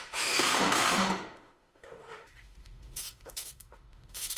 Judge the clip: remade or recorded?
remade